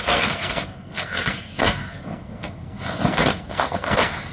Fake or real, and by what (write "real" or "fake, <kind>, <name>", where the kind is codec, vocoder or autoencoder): fake, codec, SNAC